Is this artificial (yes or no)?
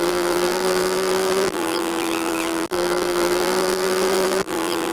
yes